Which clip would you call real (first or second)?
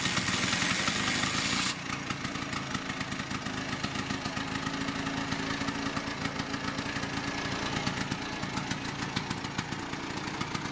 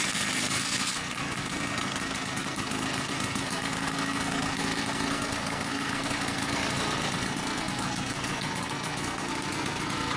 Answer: first